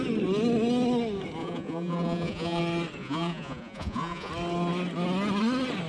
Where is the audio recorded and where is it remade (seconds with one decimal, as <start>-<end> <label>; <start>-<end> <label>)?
0.0-1.4 recorded; 1.4-2.6 remade; 2.6-3.0 recorded; 3.0-4.3 remade; 4.3-5.9 recorded